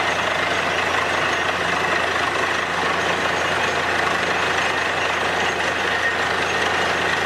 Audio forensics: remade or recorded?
recorded